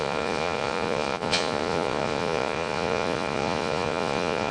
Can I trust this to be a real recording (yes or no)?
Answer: no